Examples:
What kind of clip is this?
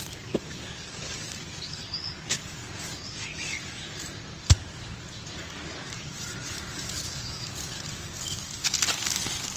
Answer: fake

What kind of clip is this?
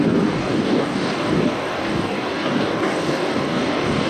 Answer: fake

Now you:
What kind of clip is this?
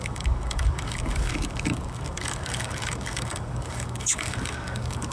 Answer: fake